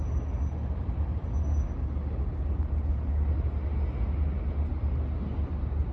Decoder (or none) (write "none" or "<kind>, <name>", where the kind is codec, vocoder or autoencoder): none